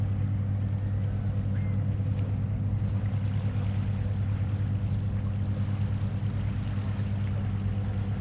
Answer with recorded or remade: recorded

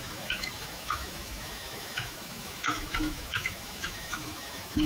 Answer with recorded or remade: remade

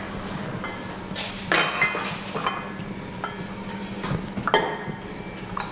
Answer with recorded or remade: recorded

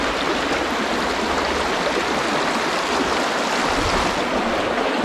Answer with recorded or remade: recorded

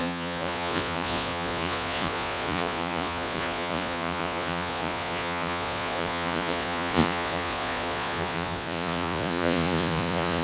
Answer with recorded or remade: remade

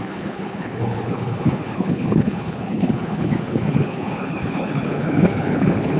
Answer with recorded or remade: remade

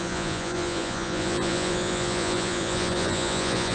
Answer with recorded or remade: remade